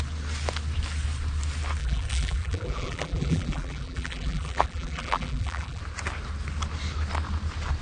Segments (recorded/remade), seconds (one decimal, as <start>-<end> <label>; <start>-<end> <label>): 0.0-1.8 recorded; 1.8-5.8 remade; 5.8-7.8 recorded